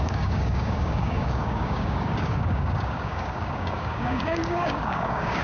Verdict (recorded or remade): remade